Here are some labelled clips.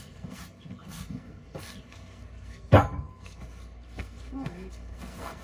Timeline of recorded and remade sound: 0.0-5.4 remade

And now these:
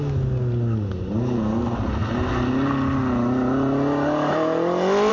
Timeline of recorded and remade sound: 0.0-5.1 recorded

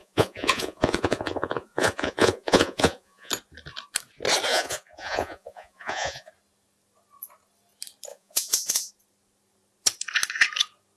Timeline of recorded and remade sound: 0.0-3.3 remade; 3.3-4.5 recorded; 4.5-6.3 remade; 6.3-8.1 recorded; 8.1-8.9 remade; 8.9-11.0 recorded

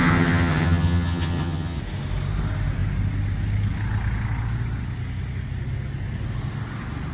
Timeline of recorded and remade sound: 0.0-1.8 remade; 1.8-7.1 recorded

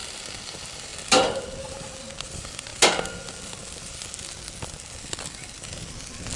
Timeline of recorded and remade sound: 0.0-0.5 recorded; 0.5-0.9 remade; 0.9-2.2 recorded; 2.2-2.7 remade; 2.7-5.0 recorded; 5.0-6.4 remade

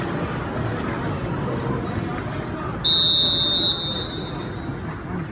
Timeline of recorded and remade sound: 0.0-5.3 recorded

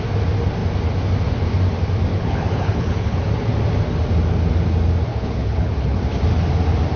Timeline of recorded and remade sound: 0.0-2.1 recorded; 2.1-3.2 remade; 3.2-5.1 recorded; 5.1-6.0 remade; 6.0-7.0 recorded

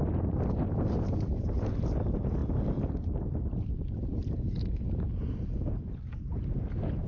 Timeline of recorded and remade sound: 0.0-7.1 recorded